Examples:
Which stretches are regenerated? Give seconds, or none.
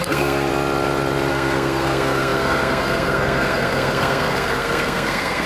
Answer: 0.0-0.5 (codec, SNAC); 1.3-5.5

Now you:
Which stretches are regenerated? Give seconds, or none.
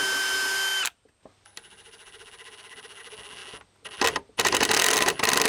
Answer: none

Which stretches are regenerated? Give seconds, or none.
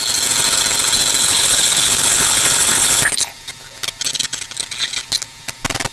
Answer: 1.2-3.3 (codec, HILCodec)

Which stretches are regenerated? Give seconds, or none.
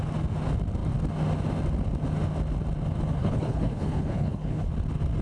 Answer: 3.2-4.7 (codec, HILCodec)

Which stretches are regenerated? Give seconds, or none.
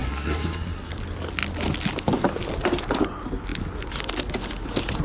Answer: 0.0-0.9 (codec, SNAC)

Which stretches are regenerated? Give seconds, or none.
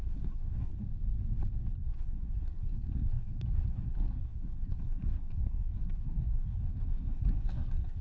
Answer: 0.0-0.7 (codec, SNAC); 1.7-8.0